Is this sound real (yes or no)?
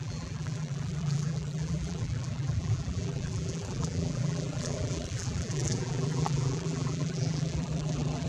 no